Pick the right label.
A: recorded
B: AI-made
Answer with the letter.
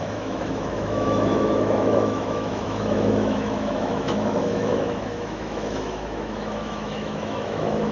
B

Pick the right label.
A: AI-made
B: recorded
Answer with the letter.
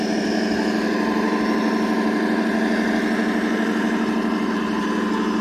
B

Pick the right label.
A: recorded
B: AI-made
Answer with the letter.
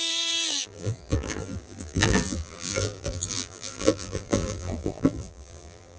B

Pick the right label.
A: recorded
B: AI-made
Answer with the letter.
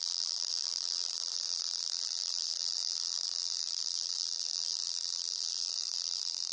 B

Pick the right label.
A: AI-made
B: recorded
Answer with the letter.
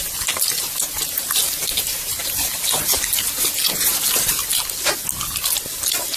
B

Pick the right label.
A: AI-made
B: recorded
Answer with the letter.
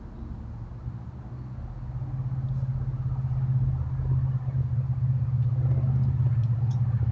B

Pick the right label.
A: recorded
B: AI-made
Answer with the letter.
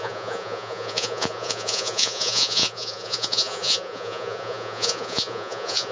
B